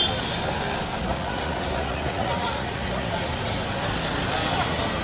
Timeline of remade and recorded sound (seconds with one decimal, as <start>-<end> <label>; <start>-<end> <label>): 0.0-1.0 recorded; 1.0-3.3 remade; 3.3-5.0 recorded